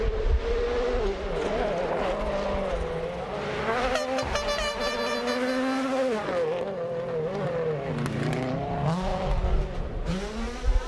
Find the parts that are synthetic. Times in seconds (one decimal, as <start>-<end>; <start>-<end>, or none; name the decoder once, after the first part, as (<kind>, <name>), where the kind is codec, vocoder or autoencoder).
none